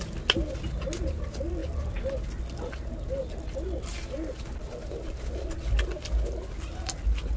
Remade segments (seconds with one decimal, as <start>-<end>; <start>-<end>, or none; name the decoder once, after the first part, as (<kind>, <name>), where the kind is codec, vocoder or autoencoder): none